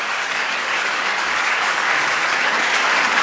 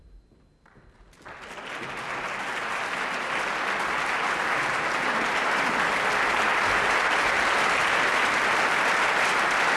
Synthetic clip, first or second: first